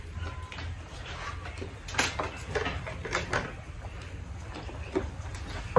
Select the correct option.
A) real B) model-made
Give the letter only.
A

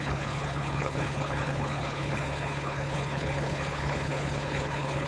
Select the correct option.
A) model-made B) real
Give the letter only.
A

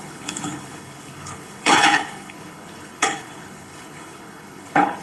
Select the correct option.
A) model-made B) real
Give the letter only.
A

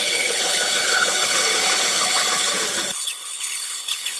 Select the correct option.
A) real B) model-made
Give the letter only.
B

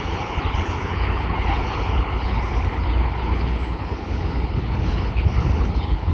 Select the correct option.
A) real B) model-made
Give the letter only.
B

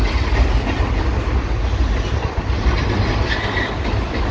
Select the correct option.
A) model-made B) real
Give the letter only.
B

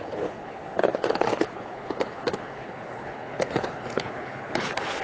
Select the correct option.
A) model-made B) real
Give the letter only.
A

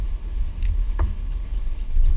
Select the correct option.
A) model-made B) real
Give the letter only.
A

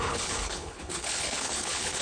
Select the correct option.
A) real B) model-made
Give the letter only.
B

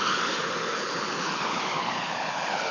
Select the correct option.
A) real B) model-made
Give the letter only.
B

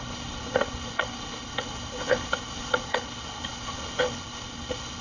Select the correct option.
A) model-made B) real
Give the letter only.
A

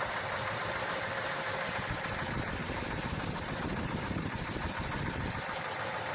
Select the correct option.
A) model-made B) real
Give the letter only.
B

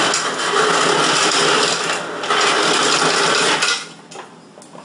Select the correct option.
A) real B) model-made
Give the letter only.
A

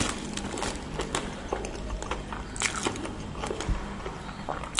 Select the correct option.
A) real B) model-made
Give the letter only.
A